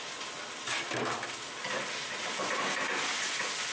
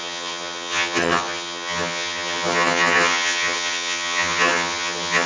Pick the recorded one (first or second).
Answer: first